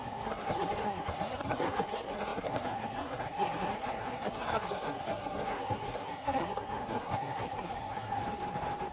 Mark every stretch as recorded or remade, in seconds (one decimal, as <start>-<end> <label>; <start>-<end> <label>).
0.0-8.2 remade; 8.2-8.9 recorded